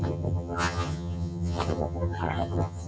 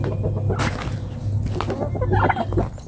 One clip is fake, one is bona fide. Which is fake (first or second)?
first